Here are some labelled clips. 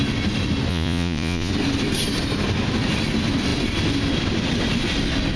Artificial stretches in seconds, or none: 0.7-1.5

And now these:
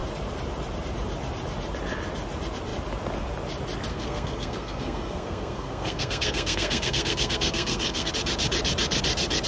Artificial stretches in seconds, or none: 3.9-8.1

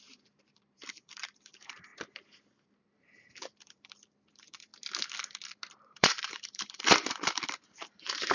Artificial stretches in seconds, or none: 0.0-1.9; 2.6-4.7; 5.7-8.3

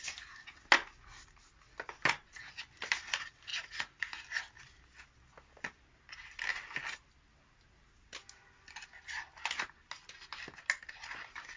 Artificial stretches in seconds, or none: 3.5-4.1

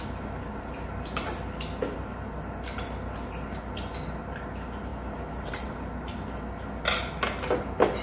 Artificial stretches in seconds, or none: none

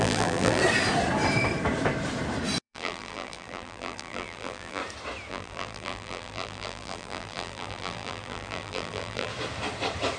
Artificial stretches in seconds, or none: 0.0-0.6; 2.6-4.8; 5.3-9.3